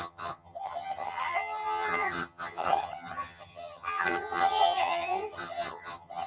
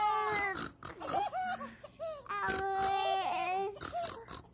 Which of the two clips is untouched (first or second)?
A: second